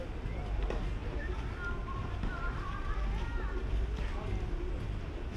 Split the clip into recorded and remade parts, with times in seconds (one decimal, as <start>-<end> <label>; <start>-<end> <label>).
0.0-5.4 recorded